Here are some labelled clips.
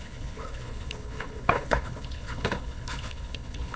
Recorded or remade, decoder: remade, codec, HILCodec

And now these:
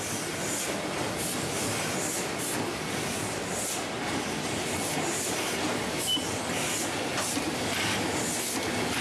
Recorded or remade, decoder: recorded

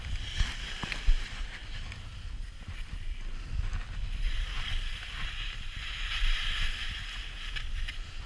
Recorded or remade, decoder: recorded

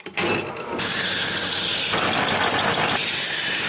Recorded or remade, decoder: recorded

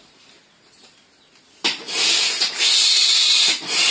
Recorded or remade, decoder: recorded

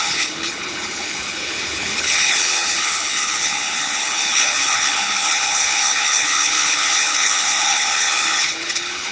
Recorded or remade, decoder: remade, codec, HILCodec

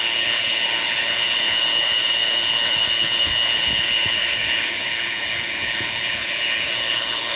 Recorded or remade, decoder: remade, codec, HILCodec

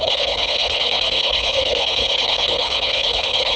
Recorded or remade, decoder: remade, codec, HILCodec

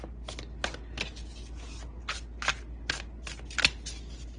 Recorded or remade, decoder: recorded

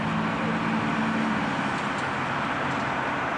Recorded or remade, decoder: recorded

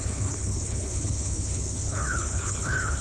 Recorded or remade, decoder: remade, codec, HILCodec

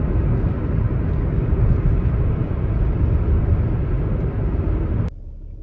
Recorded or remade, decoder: recorded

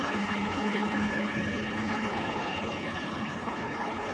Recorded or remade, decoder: remade, codec, HILCodec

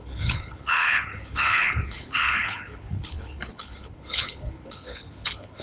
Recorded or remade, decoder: remade, codec, HILCodec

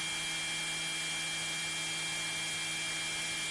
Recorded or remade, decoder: recorded